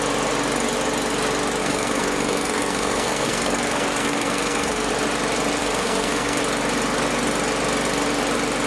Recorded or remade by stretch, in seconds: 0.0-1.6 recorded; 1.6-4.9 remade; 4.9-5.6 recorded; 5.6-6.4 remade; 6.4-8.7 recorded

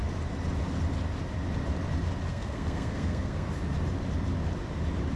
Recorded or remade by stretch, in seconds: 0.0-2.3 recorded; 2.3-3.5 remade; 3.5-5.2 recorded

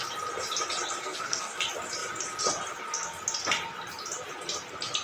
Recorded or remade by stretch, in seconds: 0.0-1.0 recorded; 1.0-1.5 remade; 1.5-5.0 recorded

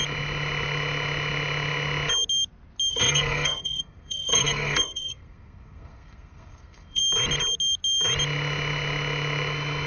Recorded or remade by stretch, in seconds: 0.0-2.9 recorded; 2.9-7.0 remade; 7.0-9.9 recorded